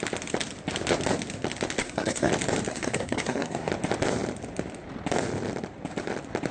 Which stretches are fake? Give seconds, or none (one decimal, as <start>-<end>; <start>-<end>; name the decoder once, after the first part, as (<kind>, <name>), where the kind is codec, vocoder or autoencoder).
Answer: 1.8-2.3 (codec, SNAC); 2.7-3.7